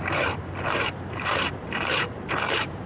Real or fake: fake